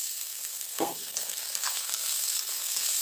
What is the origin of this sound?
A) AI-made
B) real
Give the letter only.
A